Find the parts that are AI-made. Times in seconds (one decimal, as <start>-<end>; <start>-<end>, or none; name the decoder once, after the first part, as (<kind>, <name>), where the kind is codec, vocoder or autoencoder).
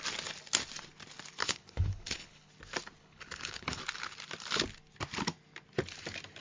1.4-2.5 (codec, HILCodec); 3.0-3.8